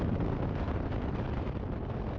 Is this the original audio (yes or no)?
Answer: yes